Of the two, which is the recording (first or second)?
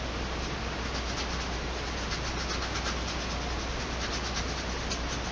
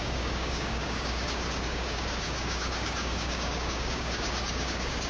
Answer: first